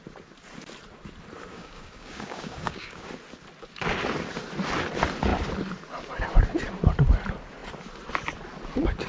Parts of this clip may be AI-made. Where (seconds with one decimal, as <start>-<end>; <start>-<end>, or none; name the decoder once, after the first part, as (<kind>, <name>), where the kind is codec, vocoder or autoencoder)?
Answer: 1.5-3.1 (codec, DAC)